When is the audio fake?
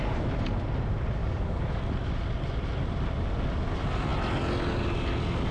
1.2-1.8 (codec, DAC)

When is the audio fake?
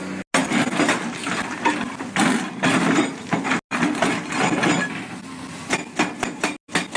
none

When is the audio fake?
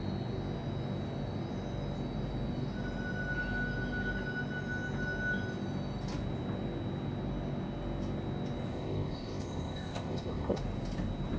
8.7-10.6 (codec, ZipCodec)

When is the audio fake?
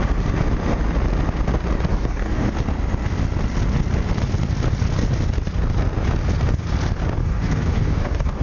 1.9-2.5 (codec, DAC); 7.2-8.4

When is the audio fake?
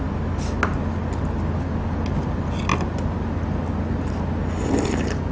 none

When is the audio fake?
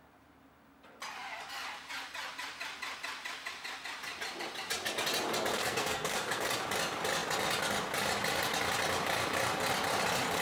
5.5-6.5 (codec, SNAC)